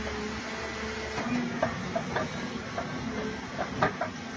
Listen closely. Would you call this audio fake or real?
real